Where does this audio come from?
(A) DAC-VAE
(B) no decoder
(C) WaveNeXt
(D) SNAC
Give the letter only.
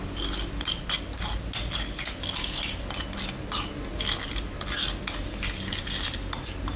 B